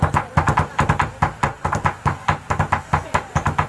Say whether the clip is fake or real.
real